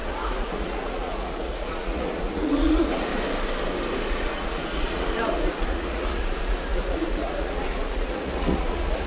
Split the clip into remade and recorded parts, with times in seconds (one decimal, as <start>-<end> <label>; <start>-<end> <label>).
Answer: 0.0-3.1 remade; 3.1-4.1 recorded; 4.1-9.1 remade